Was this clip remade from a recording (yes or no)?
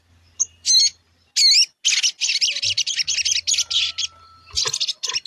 no